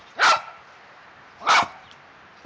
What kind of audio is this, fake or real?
real